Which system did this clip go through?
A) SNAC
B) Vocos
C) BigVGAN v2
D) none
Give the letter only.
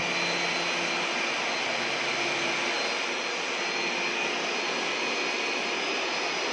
D